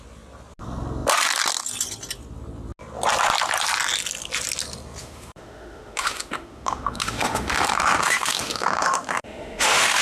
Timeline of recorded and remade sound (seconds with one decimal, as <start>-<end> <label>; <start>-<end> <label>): 0.0-5.0 recorded; 5.0-10.0 remade